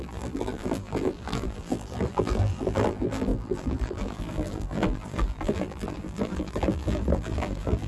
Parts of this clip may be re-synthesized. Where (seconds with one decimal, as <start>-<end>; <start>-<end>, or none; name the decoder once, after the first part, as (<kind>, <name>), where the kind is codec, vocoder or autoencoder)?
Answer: 0.0-7.9 (vocoder, BigVGAN v2)